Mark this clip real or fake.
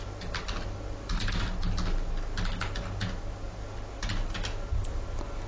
real